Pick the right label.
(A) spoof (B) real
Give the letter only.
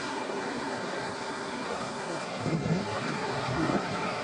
A